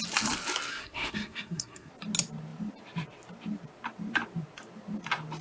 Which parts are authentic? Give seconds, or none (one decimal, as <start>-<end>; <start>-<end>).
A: 0.0-0.7; 1.9-5.4